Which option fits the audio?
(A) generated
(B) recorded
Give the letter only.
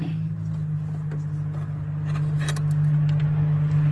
B